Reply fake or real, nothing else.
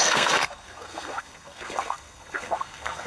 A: fake